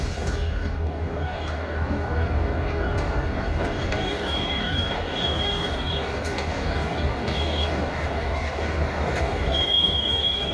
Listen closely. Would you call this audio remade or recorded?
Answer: remade